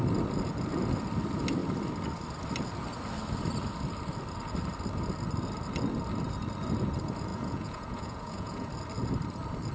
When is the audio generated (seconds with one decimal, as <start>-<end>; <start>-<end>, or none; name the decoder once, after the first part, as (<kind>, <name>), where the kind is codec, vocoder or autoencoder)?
7.3-8.7 (vocoder, Vocos)